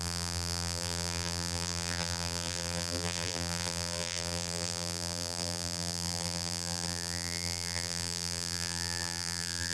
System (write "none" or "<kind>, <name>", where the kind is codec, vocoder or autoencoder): vocoder, BigVGAN v2